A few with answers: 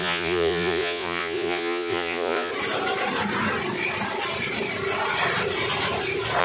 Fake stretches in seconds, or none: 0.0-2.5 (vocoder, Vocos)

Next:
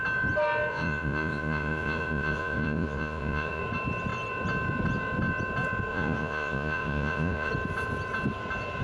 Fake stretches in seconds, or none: 0.7-3.6 (vocoder, Vocos); 5.9-7.5

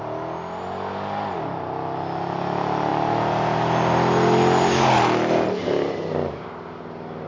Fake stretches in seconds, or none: none

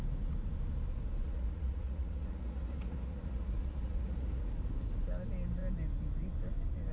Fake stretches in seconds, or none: 1.2-4.4 (vocoder, Vocos)

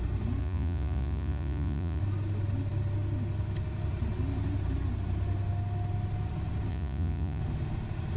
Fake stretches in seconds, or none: 0.4-2.0 (vocoder, Vocos); 6.7-7.4

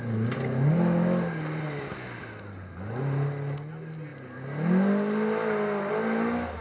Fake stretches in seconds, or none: none

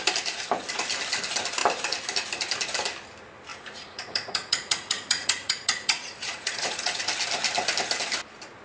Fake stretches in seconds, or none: 3.5-7.0 (vocoder, Vocos)